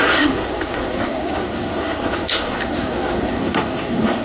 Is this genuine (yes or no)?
no